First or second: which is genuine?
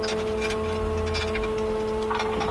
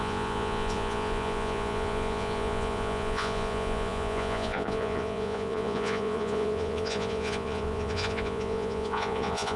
first